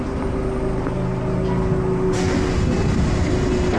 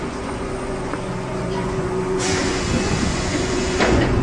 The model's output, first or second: second